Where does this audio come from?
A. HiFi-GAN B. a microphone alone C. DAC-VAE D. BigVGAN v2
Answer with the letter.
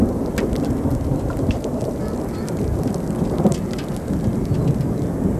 B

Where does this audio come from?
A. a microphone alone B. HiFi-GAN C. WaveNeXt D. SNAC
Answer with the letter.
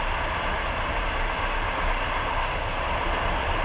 A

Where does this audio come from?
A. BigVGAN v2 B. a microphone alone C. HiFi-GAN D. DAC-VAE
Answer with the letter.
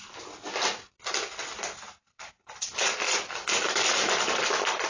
B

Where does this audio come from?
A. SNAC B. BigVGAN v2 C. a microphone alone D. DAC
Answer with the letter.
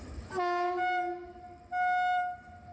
C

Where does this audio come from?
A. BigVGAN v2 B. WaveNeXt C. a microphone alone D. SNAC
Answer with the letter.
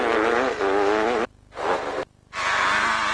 C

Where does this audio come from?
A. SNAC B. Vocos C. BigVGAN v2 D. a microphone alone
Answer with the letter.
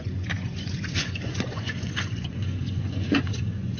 B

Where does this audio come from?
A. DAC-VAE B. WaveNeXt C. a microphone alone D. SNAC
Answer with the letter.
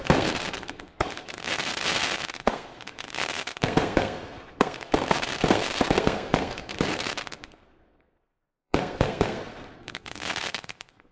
D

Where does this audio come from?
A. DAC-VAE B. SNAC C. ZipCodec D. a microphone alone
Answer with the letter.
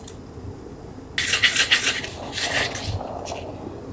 D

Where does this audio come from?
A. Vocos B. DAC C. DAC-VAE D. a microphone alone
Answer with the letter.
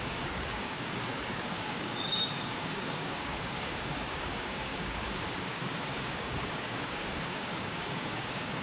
B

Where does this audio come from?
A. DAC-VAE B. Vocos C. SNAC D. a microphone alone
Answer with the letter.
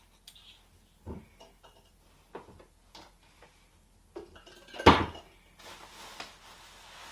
D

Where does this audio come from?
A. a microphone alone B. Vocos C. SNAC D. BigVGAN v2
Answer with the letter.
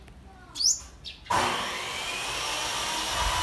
A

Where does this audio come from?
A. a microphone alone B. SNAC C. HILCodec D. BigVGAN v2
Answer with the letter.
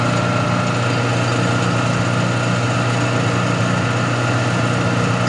A